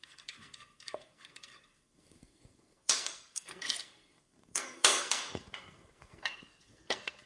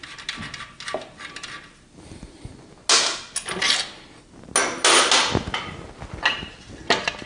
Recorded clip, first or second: second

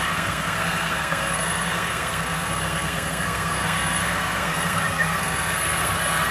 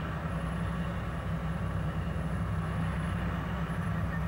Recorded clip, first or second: second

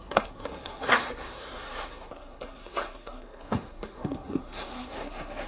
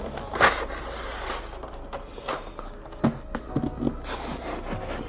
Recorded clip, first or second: second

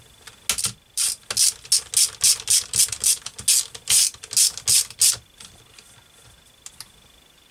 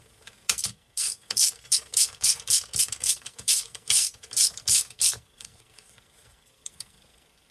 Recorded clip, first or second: first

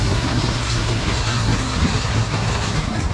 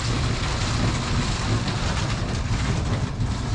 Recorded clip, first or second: second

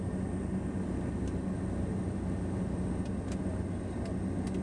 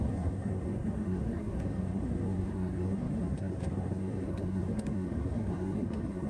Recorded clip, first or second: first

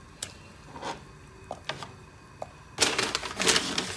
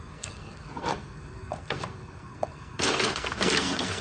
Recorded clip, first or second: first